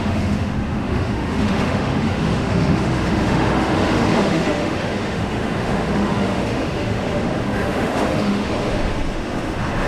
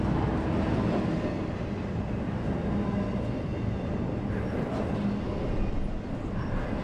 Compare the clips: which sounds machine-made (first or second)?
first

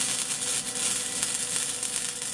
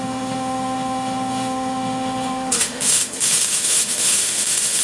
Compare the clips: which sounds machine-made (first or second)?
second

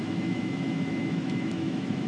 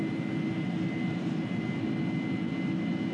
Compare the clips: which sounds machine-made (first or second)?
first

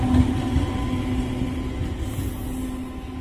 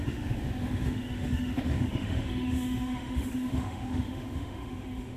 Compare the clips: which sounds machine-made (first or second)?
second